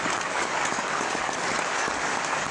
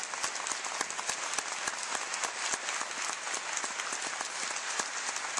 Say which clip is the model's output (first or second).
first